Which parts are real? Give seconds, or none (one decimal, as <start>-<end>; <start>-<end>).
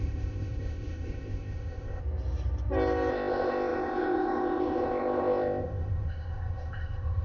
2.0-3.1